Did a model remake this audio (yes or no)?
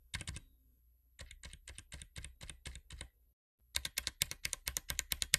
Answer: no